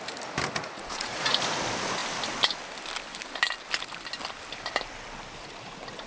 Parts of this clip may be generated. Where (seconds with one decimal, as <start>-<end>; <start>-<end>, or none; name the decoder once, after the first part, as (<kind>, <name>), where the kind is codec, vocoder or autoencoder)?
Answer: 0.6-1.4 (vocoder, Vocos)